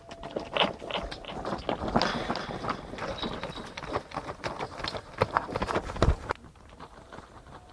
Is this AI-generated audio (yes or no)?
no